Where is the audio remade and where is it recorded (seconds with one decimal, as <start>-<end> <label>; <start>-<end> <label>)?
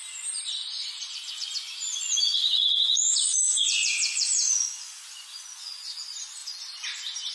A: 0.0-0.8 recorded; 0.8-6.4 remade; 6.4-7.3 recorded